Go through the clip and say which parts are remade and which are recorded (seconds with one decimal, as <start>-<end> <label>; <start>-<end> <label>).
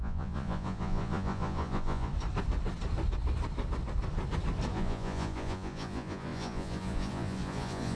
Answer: 0.0-2.1 remade; 2.1-4.7 recorded; 4.7-8.0 remade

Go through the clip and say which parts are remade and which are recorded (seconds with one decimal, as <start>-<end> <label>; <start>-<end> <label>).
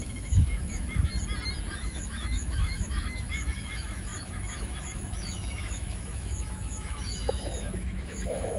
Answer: 0.0-1.1 remade; 1.1-1.7 recorded; 1.7-8.6 remade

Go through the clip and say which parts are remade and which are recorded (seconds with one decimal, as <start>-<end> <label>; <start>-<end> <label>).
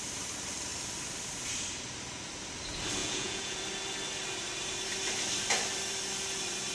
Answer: 0.0-3.0 recorded; 3.0-3.6 remade; 3.6-6.7 recorded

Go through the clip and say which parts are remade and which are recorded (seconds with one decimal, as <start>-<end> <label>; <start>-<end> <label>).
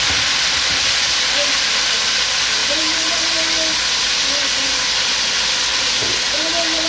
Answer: 0.0-2.6 recorded; 2.6-3.1 remade; 3.1-5.7 recorded; 5.7-6.5 remade; 6.5-6.9 recorded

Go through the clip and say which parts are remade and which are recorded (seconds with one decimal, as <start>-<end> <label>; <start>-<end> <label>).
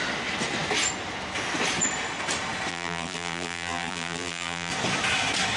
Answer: 0.0-2.7 recorded; 2.7-4.7 remade; 4.7-5.6 recorded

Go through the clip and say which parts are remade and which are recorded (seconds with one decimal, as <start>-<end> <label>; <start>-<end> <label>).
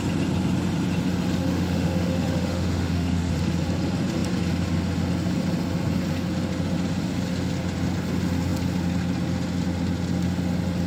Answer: 0.0-1.4 recorded; 1.4-3.3 remade; 3.3-10.9 recorded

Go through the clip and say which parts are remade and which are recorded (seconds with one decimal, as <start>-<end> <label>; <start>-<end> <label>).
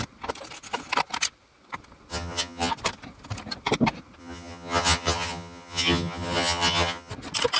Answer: 0.0-2.1 recorded; 2.1-2.7 remade; 2.7-4.2 recorded; 4.2-7.1 remade; 7.1-7.6 recorded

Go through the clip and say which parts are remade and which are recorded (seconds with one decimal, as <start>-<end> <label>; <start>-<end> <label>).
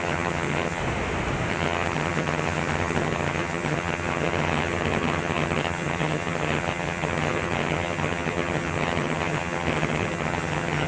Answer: 0.0-0.8 remade; 0.8-1.5 recorded; 1.5-10.9 remade